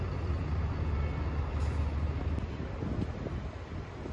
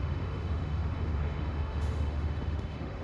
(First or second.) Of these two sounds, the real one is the first